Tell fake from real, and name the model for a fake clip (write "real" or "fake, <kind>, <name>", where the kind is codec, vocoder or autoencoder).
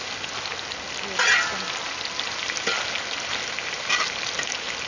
real